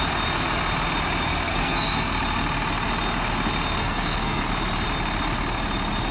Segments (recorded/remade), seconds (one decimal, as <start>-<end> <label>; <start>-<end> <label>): 0.0-1.5 recorded; 1.5-2.1 remade; 2.1-3.8 recorded; 3.8-4.4 remade; 4.4-6.1 recorded